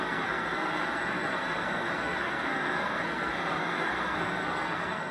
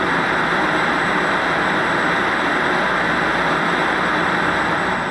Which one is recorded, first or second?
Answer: second